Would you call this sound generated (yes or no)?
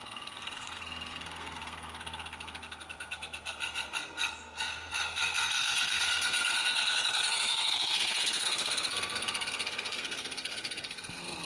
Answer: yes